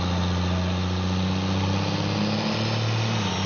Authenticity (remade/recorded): recorded